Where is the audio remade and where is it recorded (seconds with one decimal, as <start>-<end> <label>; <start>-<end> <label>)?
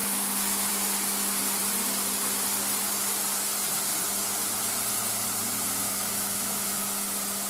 0.0-0.7 remade; 0.7-5.8 recorded; 5.8-6.8 remade; 6.8-7.5 recorded